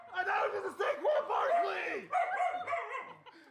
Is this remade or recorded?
recorded